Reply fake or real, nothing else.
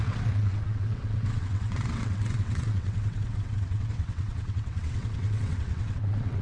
fake